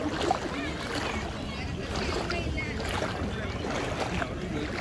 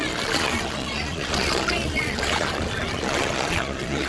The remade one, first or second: second